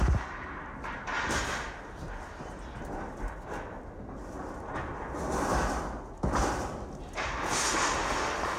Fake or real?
real